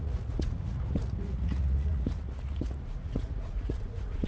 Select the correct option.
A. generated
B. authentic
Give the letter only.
A